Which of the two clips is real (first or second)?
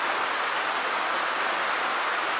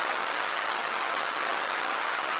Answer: first